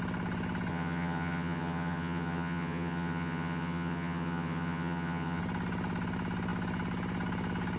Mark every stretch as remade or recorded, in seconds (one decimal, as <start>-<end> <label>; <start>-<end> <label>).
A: 0.0-0.7 recorded; 0.7-5.4 remade; 5.4-7.8 recorded